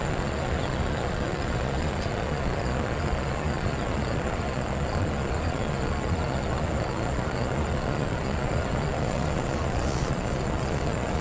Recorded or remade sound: remade